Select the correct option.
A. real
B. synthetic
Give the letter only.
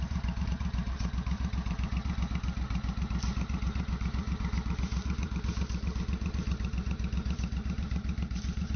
B